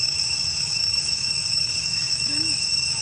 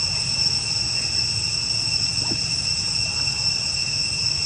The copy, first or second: first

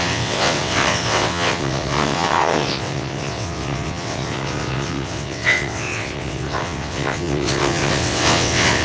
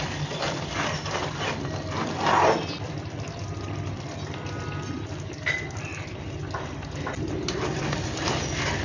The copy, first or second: first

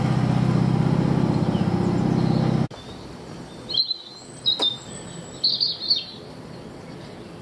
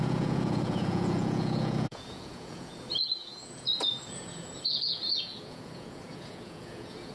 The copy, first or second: second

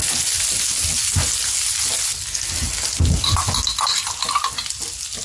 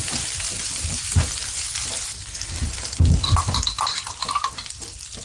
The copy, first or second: second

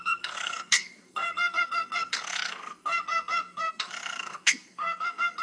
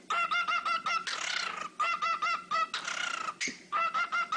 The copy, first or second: first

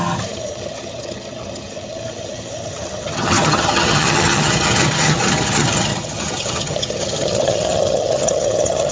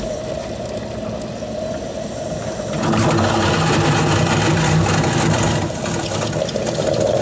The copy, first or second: first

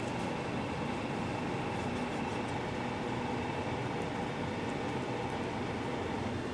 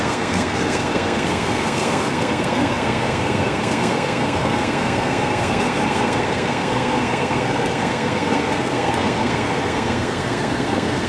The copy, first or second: second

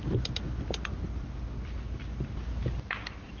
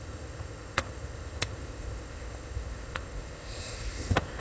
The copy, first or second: second